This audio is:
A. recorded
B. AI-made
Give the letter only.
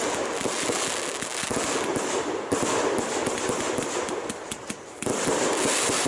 A